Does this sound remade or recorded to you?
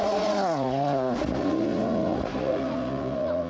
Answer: remade